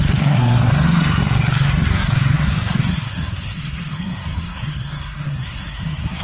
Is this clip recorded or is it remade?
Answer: remade